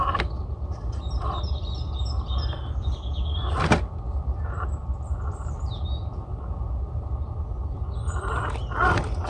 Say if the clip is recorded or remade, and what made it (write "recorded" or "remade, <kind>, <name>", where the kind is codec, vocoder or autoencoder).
recorded